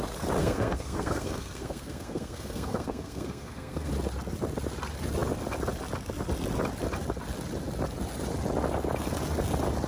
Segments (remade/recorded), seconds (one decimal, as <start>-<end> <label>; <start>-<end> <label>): 0.0-0.4 recorded; 0.4-3.9 remade; 3.9-9.9 recorded